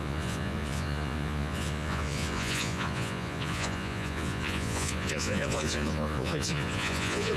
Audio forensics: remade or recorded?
remade